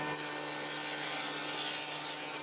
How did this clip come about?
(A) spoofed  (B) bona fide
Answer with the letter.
B